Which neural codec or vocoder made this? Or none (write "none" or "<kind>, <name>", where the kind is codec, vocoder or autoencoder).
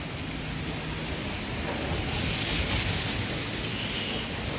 none